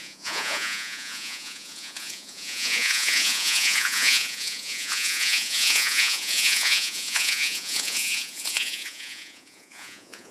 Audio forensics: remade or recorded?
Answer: remade